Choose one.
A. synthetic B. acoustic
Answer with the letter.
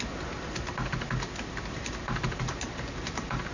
B